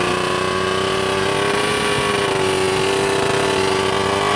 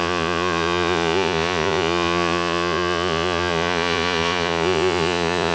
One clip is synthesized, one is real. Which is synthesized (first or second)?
second